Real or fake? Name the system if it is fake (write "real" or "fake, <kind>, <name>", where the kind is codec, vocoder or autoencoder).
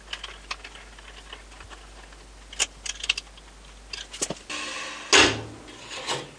real